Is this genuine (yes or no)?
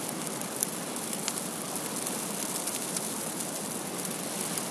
yes